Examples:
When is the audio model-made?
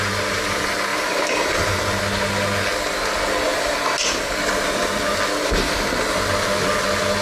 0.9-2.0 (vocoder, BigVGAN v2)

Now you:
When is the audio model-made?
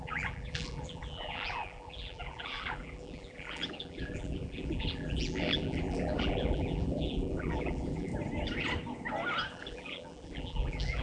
0.0-8.1 (vocoder, BigVGAN v2); 9.5-11.0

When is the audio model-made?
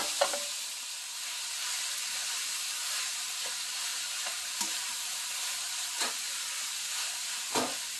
3.9-6.7 (vocoder, BigVGAN v2)